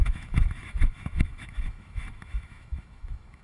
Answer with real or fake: fake